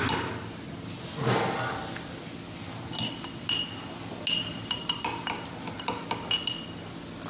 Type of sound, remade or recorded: recorded